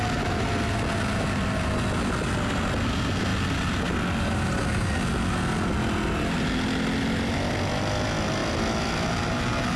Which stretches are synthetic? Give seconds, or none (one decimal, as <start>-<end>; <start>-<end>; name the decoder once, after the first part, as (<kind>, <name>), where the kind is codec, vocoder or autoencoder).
none